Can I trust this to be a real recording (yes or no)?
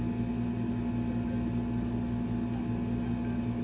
yes